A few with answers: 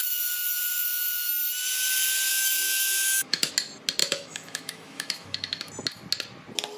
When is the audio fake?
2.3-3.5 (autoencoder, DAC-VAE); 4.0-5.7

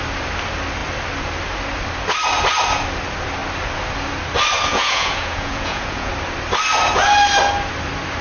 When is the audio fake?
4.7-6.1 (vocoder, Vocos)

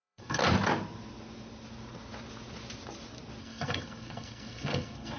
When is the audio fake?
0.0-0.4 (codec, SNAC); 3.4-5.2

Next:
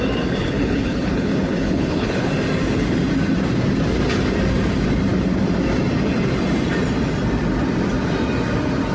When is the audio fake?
0.4-2.3 (codec, HILCodec)

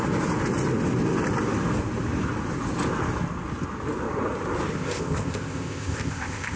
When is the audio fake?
4.7-6.6 (codec, ZipCodec)

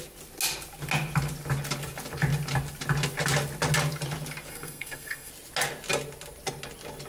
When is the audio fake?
4.5-5.3 (codec, SNAC)

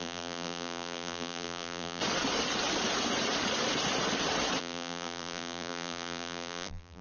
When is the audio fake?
0.0-2.0 (vocoder, BigVGAN v2); 4.6-7.0